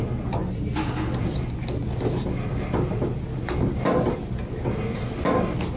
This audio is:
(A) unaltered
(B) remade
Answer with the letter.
A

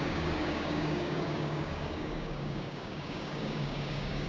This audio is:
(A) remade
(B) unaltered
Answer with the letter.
A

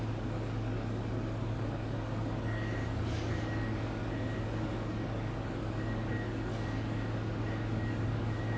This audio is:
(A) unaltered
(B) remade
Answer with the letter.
B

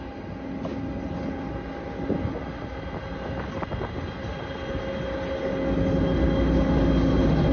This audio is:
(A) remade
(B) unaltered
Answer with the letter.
B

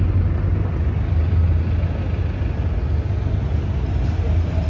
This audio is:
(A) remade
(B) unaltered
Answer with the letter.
B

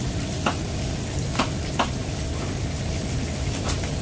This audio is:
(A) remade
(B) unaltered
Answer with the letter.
B